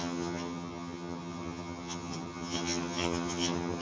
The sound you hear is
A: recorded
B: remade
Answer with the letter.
B